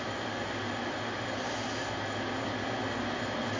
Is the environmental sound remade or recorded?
recorded